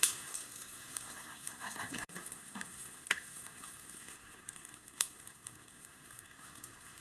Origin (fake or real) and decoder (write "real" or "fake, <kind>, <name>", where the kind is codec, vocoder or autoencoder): fake, codec, SNAC